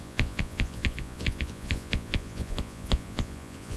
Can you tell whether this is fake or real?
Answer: fake